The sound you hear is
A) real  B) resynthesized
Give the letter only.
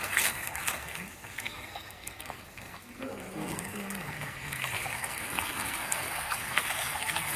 B